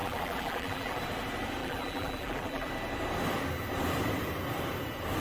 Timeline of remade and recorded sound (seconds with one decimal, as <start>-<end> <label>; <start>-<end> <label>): 0.0-1.0 remade; 1.0-1.6 recorded; 1.6-2.7 remade; 2.7-5.2 recorded